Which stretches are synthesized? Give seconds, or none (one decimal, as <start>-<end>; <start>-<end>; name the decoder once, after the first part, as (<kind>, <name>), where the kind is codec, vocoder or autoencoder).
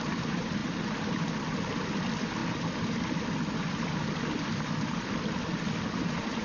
none